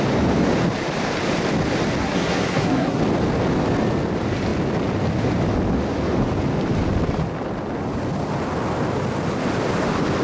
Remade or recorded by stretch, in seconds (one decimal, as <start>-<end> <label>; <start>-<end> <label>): 0.0-2.0 recorded; 2.0-3.0 remade; 3.0-10.2 recorded